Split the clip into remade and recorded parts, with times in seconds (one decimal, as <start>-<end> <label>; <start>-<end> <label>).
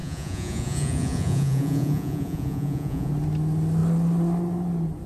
0.0-3.1 remade; 3.1-5.1 recorded